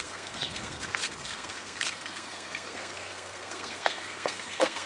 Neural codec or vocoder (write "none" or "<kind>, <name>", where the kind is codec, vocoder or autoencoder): codec, SNAC